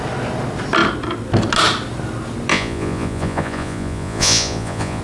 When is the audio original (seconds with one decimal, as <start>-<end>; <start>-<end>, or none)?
0.0-2.5